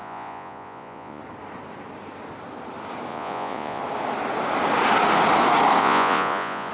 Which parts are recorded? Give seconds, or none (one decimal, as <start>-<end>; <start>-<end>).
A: 1.2-3.1; 3.8-5.8